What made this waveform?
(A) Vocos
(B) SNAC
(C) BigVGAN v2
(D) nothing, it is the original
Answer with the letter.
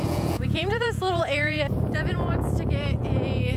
A